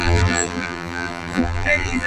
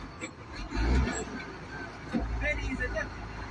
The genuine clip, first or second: second